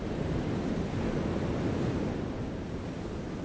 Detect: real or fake real